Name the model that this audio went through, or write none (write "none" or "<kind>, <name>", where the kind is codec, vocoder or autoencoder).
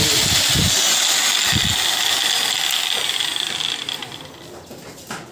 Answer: none